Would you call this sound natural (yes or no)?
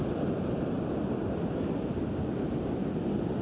yes